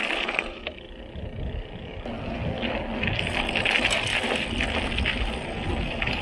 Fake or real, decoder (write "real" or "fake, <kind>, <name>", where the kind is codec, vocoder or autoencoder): real